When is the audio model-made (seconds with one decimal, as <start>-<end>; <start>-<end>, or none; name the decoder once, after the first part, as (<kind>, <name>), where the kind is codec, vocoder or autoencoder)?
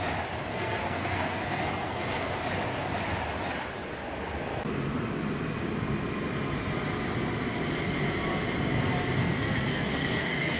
0.5-2.3 (codec, SNAC); 9.2-10.6